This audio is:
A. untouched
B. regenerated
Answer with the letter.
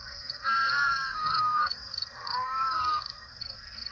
B